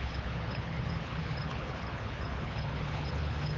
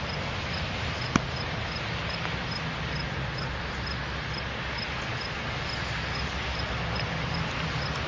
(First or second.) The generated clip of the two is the first